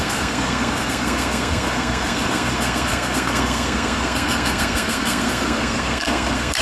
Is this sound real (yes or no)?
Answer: no